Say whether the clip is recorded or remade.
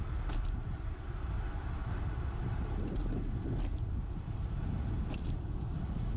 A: recorded